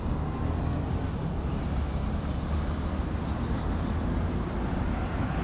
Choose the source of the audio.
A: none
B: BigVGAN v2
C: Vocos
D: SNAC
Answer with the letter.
A